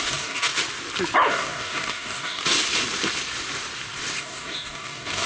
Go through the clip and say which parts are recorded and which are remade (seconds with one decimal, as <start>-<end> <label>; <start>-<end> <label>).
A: 0.0-0.5 remade; 0.5-1.3 recorded; 1.3-2.4 remade; 2.4-4.2 recorded; 4.2-5.3 remade

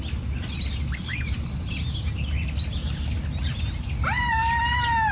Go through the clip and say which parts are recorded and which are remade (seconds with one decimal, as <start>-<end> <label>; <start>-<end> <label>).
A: 0.0-5.1 recorded

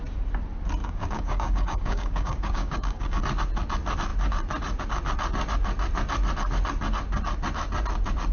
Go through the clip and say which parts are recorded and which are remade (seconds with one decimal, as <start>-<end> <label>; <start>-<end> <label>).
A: 0.0-0.8 recorded; 0.8-3.2 remade; 3.2-8.3 recorded

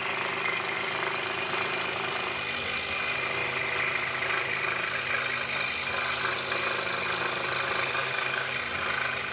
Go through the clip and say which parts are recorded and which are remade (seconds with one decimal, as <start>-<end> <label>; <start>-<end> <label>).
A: 0.0-8.0 recorded; 8.0-8.5 remade; 8.5-9.3 recorded

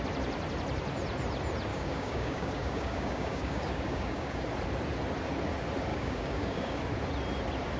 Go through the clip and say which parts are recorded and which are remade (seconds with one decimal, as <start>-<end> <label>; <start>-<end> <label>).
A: 0.0-1.7 recorded; 1.7-4.5 remade; 4.5-5.9 recorded; 5.9-6.8 remade; 6.8-7.8 recorded

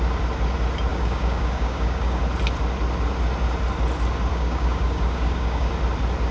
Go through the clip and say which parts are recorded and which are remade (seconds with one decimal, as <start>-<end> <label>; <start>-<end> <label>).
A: 0.0-0.9 recorded; 0.9-2.2 remade; 2.2-4.3 recorded; 4.3-5.7 remade; 5.7-6.3 recorded